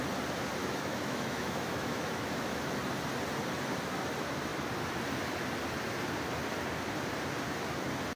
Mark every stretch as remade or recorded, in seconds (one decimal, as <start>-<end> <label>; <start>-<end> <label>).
0.0-0.6 recorded; 0.6-2.6 remade; 2.6-8.2 recorded